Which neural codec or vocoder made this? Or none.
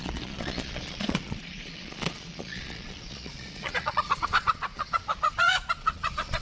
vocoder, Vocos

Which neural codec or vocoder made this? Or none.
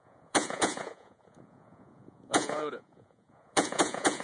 vocoder, Vocos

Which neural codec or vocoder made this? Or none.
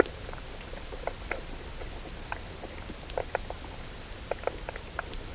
none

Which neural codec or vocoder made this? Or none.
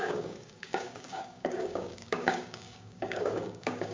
codec, DAC